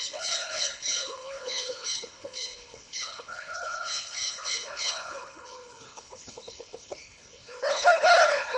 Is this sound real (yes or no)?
no